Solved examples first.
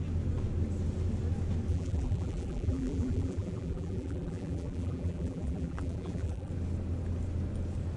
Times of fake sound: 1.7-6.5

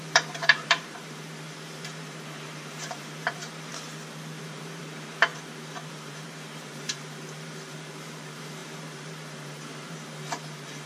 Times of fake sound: 0.0-3.7; 4.4-5.3; 5.9-10.9